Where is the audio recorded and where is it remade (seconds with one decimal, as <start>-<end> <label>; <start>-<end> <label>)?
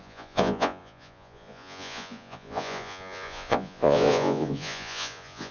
0.0-5.5 remade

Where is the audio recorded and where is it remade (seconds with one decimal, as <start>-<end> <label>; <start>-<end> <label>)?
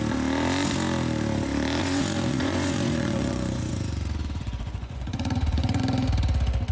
0.0-1.8 recorded; 1.8-5.8 remade; 5.8-6.7 recorded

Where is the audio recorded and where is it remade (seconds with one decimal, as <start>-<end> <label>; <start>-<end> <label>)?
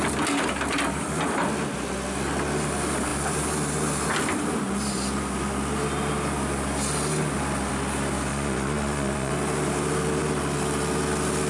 0.0-8.3 recorded; 8.3-9.3 remade; 9.3-11.5 recorded